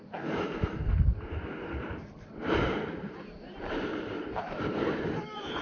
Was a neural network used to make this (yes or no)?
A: yes